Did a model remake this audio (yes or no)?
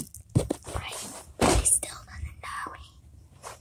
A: no